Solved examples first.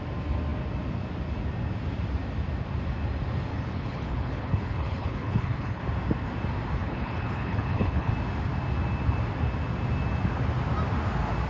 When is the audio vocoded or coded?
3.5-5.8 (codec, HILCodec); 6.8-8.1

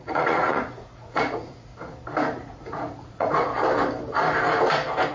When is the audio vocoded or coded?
0.0-1.7 (vocoder, Vocos); 2.4-3.5

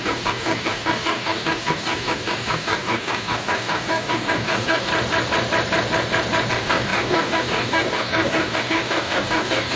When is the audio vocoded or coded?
0.0-4.9 (codec, DAC); 6.5-9.8

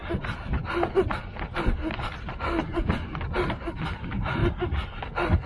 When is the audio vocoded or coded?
none

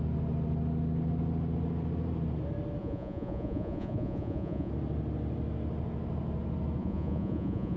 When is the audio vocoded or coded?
2.8-4.7 (vocoder, Vocos); 6.8-7.8

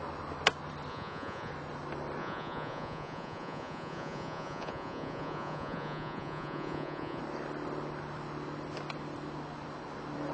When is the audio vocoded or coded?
0.9-1.5 (vocoder, Vocos); 2.2-7.2

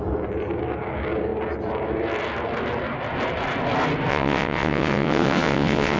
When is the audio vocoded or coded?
4.1-6.0 (vocoder, WaveNeXt)

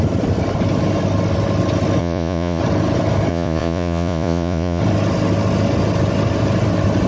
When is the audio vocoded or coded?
2.0-2.6 (vocoder, Vocos); 3.3-4.8